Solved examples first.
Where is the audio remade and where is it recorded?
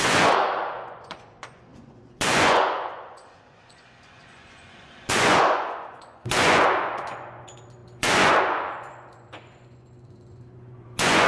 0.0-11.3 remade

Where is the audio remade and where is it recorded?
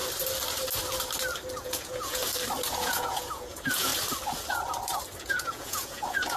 0.0-1.6 recorded; 1.6-2.2 remade; 2.2-2.7 recorded; 2.7-3.9 remade; 3.9-5.2 recorded; 5.2-6.4 remade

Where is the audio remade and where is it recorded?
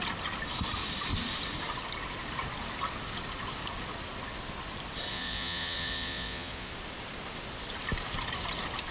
0.0-5.1 recorded; 5.1-6.7 remade; 6.7-8.9 recorded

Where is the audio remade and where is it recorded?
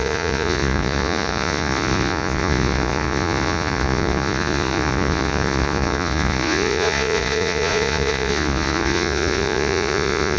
0.0-10.4 remade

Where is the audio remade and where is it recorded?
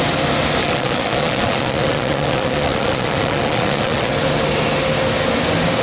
0.0-0.6 recorded; 0.6-4.1 remade; 4.1-5.8 recorded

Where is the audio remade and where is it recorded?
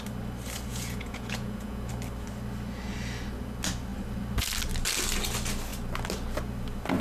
0.0-0.7 recorded; 0.7-1.9 remade; 1.9-7.0 recorded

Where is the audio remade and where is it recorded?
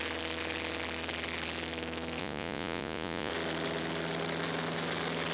0.0-2.2 recorded; 2.2-3.3 remade; 3.3-5.3 recorded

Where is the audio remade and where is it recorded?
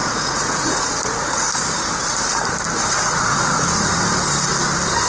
0.0-1.5 remade; 1.5-2.8 recorded; 2.8-4.0 remade; 4.0-5.1 recorded